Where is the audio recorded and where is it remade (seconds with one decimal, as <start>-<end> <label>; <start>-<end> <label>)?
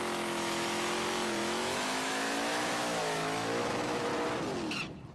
0.0-4.1 remade; 4.1-5.1 recorded